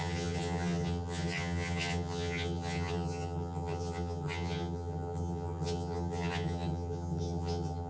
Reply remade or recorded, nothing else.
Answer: remade